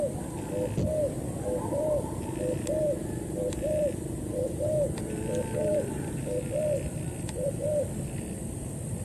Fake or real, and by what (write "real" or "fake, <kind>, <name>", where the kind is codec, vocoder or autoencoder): fake, vocoder, BigVGAN v2